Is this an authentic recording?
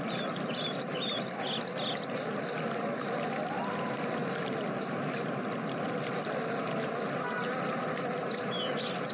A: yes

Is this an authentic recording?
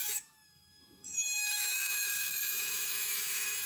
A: no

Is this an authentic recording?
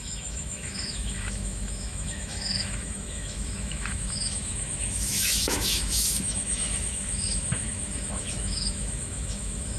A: no